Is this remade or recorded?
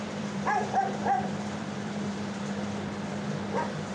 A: remade